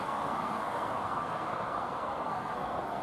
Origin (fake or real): fake